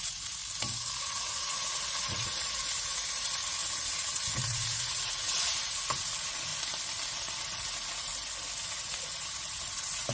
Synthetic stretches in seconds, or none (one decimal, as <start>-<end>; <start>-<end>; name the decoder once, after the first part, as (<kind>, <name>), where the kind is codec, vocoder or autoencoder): 0.0-0.4 (vocoder, Vocos); 1.0-6.5; 7.4-8.1; 8.7-10.1

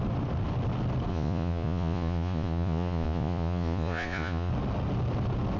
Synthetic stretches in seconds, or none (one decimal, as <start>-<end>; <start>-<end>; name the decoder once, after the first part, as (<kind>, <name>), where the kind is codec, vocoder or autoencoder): 1.1-4.5 (vocoder, Vocos)

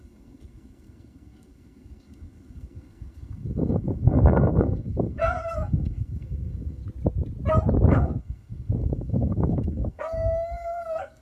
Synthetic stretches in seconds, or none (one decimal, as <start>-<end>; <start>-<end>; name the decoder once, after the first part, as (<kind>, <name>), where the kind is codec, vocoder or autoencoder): 0.0-6.8 (codec, SNAC); 7.9-11.2

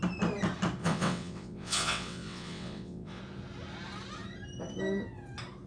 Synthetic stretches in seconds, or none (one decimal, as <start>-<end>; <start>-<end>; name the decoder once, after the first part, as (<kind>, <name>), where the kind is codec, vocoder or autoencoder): 0.8-3.2 (vocoder, WaveNeXt)

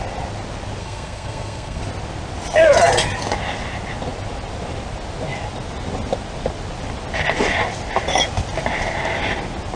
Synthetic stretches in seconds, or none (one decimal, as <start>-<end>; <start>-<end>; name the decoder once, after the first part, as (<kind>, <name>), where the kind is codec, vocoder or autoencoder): 0.8-1.8 (codec, SNAC)